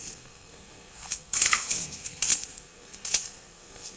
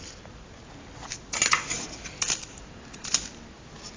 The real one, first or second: second